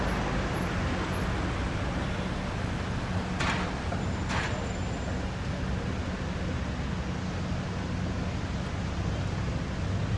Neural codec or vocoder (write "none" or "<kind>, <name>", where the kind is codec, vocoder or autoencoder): none